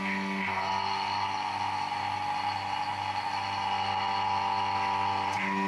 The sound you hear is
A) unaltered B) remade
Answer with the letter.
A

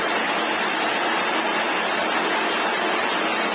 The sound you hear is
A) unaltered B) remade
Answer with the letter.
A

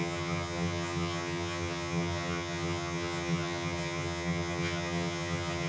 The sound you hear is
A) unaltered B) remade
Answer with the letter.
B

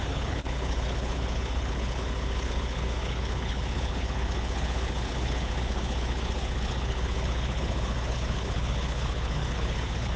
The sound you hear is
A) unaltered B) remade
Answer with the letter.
B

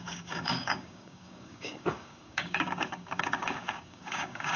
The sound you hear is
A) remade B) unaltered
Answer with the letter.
A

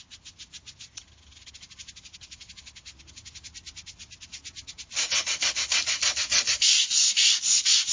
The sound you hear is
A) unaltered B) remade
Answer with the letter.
A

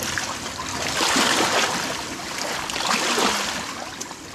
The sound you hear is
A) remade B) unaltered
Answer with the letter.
B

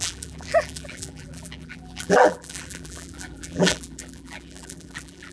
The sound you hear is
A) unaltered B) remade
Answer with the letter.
B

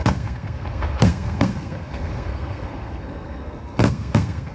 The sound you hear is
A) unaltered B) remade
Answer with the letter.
B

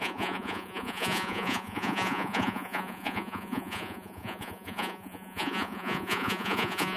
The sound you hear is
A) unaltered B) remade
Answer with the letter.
B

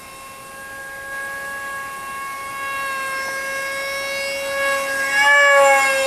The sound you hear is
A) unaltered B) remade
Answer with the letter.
A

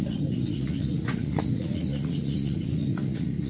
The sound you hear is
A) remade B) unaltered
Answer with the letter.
A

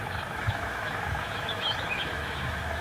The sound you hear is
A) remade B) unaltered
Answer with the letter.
A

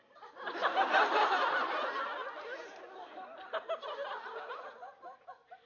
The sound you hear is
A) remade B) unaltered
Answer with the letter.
B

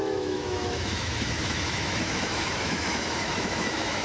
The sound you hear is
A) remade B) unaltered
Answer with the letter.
A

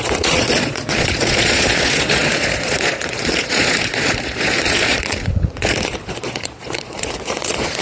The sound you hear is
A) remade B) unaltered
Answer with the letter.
A